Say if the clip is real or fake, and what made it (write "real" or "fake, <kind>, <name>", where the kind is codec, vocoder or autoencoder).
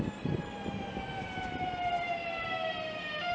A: real